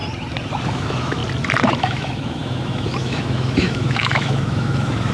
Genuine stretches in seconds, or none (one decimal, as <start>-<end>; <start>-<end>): 0.0-0.7; 1.2-1.8